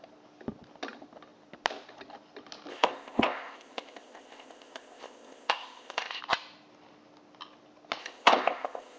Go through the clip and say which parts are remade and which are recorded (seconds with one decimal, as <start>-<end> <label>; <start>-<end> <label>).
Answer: 0.0-2.7 recorded; 2.7-6.2 remade; 6.2-8.0 recorded; 8.0-9.0 remade